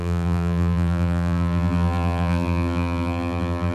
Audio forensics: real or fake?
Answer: fake